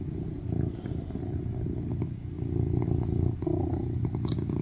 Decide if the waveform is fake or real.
real